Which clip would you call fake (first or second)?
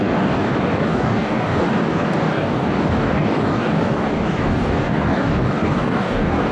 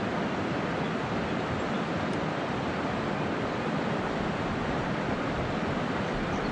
first